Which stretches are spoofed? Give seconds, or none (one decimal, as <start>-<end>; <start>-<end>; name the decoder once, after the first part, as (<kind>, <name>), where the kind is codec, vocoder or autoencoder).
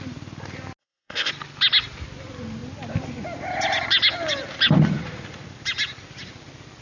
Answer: 0.8-1.3 (codec, ZipCodec)